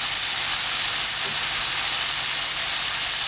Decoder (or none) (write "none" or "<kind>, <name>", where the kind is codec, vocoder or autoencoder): none